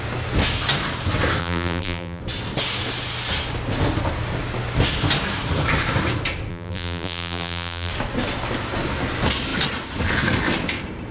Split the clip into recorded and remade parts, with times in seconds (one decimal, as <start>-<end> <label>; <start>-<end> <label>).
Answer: 0.0-1.4 recorded; 1.4-2.2 remade; 2.2-6.5 recorded; 6.5-7.9 remade; 7.9-11.1 recorded